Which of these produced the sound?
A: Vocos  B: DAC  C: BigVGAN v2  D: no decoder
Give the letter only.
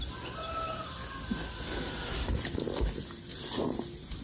D